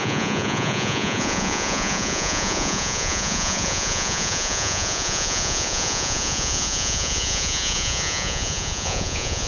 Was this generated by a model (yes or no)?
yes